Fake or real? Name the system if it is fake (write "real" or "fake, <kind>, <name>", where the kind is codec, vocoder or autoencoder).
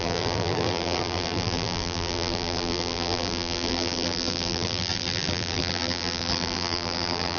fake, vocoder, BigVGAN v2